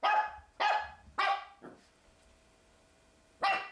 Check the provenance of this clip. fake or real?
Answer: real